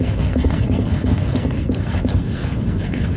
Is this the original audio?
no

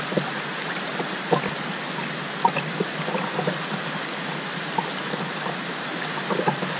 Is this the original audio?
yes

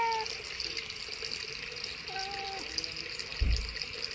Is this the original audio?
yes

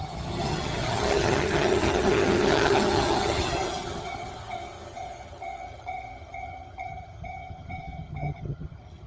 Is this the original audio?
no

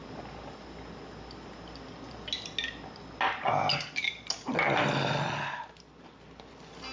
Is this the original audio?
yes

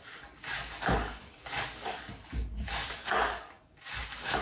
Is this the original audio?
no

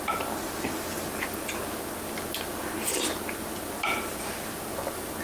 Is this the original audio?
yes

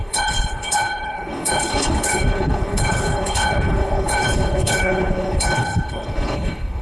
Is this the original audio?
no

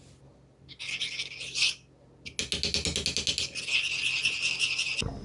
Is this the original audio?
yes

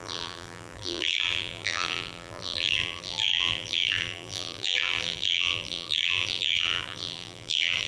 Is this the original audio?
no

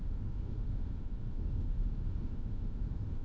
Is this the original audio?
no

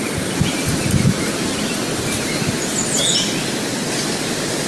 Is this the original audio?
yes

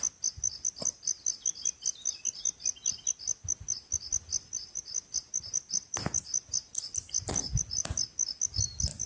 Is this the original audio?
yes